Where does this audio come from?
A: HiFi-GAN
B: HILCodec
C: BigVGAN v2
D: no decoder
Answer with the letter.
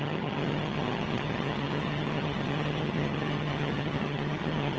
A